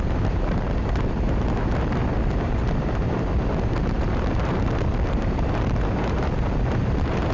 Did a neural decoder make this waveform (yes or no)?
yes